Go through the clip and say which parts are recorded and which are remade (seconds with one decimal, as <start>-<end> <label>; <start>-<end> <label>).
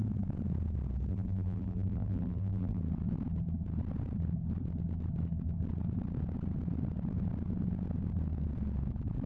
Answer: 0.0-1.1 recorded; 1.1-2.8 remade; 2.8-9.3 recorded